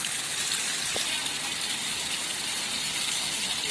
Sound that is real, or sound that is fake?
real